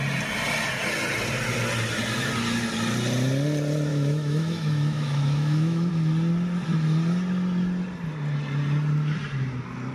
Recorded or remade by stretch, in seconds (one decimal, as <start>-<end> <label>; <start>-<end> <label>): 0.0-3.9 recorded; 3.9-5.9 remade; 5.9-9.9 recorded